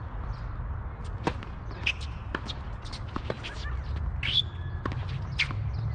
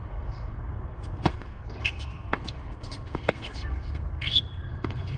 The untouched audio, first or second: first